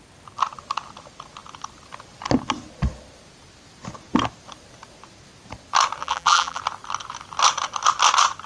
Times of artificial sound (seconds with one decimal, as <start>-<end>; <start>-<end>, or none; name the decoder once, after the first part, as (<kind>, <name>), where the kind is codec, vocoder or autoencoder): 6.0-6.6 (vocoder, BigVGAN v2)